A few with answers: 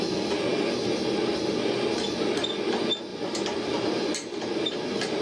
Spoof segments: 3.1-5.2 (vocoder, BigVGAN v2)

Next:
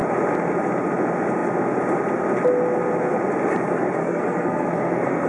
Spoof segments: 4.0-5.3 (codec, SNAC)

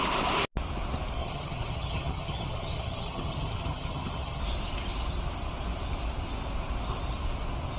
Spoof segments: 1.2-4.4 (vocoder, HiFi-GAN)

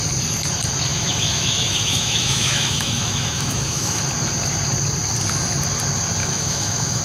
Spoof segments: 0.9-4.0 (autoencoder, DAC-VAE); 6.2-7.0

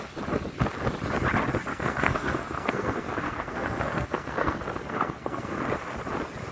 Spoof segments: 1.7-5.6 (codec, SNAC)

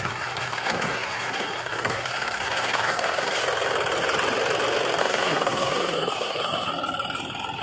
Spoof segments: 0.0-3.4 (codec, SNAC); 5.0-6.7

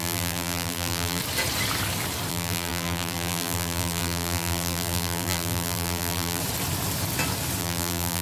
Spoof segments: 0.0-1.2 (vocoder, BigVGAN v2); 2.3-6.4; 7.6-8.2

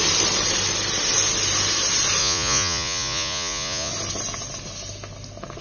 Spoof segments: 2.2-3.9 (vocoder, Vocos)